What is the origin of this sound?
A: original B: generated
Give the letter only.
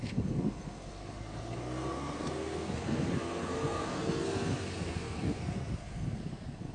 B